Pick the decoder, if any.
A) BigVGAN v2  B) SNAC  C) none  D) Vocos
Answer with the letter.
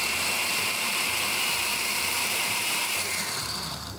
A